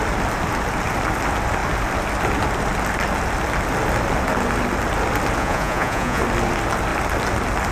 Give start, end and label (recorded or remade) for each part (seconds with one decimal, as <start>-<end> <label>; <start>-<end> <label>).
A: 0.0-5.4 recorded; 5.4-6.2 remade; 6.2-7.7 recorded